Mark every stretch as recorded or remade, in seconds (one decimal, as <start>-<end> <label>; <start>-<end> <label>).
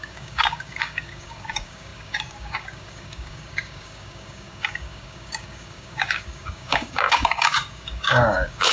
0.0-8.7 remade